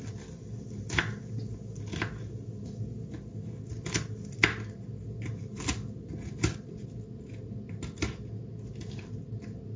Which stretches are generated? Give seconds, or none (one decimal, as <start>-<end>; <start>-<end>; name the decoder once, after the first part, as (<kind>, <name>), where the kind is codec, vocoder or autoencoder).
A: none